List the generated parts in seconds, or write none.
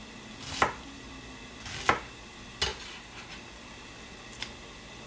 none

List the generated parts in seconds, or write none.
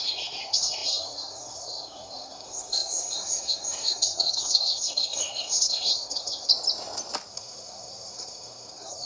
0.0-6.5 (codec, SNAC); 7.3-9.1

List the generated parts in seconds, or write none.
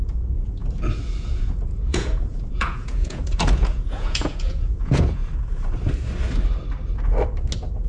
0.0-0.6 (vocoder, Vocos); 1.2-5.2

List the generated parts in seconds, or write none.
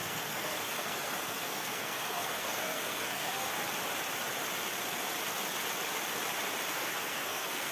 0.0-3.5 (codec, SNAC); 6.7-7.7